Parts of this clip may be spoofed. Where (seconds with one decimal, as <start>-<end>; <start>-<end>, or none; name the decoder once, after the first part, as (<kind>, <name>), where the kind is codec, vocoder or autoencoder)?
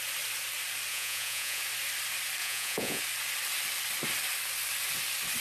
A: 0.9-1.6 (vocoder, Vocos); 2.4-3.0